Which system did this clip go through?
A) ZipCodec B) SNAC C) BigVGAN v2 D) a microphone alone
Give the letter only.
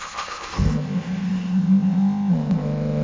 A